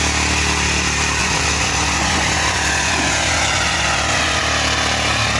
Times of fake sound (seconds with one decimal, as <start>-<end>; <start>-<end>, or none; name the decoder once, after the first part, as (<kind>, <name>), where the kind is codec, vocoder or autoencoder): 1.2-4.4 (vocoder, Vocos)